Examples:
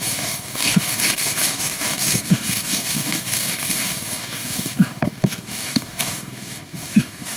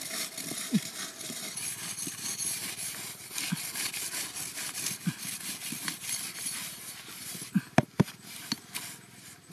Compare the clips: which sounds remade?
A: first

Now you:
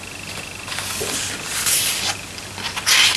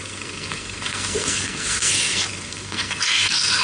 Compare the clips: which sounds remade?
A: second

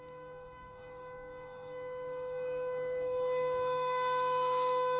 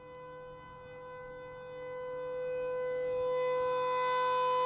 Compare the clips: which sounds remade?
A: first